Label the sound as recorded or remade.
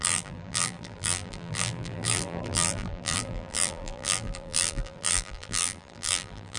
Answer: remade